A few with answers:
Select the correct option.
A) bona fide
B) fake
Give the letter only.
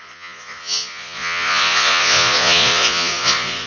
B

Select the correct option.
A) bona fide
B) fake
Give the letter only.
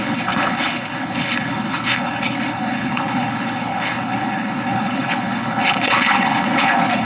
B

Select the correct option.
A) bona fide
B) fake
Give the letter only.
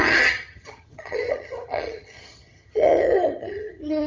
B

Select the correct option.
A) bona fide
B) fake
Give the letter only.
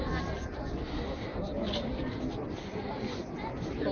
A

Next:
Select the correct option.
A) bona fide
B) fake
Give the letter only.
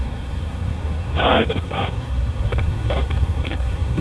B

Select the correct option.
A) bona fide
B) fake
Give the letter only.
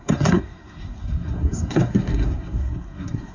B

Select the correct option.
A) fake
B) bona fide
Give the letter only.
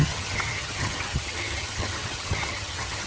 A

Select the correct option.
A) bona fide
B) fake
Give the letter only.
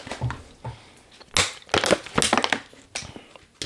A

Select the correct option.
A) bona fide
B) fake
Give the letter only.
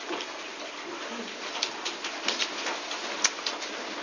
A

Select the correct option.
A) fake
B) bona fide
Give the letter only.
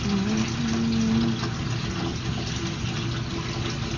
B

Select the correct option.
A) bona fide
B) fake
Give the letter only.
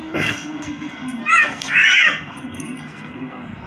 B